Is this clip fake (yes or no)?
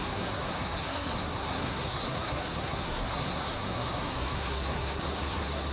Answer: yes